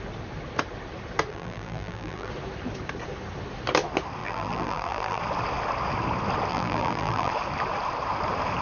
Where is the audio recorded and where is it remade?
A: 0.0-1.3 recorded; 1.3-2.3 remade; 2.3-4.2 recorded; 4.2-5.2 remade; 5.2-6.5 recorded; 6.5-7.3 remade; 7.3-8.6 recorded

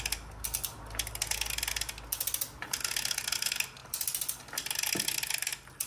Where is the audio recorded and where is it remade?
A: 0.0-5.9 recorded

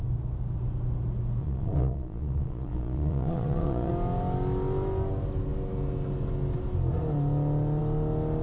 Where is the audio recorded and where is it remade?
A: 0.0-1.4 recorded; 1.4-3.9 remade; 3.9-8.4 recorded

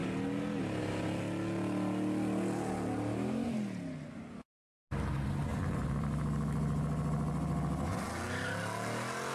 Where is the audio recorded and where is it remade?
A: 0.0-5.5 recorded; 5.5-6.8 remade; 6.8-9.3 recorded

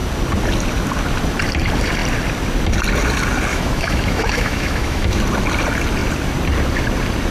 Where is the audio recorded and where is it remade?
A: 0.0-3.5 recorded; 3.5-5.2 remade; 5.2-7.3 recorded

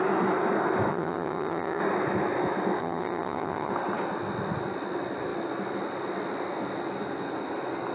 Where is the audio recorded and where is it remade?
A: 0.0-0.9 recorded; 0.9-1.8 remade; 1.8-2.8 recorded; 2.8-3.7 remade; 3.7-7.9 recorded

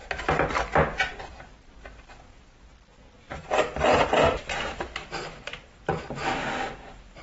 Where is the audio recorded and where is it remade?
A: 0.0-3.4 recorded; 3.4-6.5 remade; 6.5-7.2 recorded

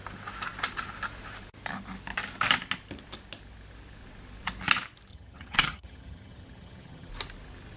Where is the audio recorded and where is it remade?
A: 0.0-5.1 recorded; 5.1-7.1 remade; 7.1-7.8 recorded